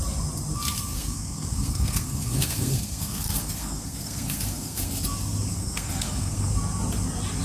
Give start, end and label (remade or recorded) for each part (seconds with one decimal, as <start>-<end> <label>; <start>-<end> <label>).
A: 0.0-0.9 recorded; 0.9-5.0 remade; 5.0-5.5 recorded; 5.5-6.5 remade; 6.5-7.4 recorded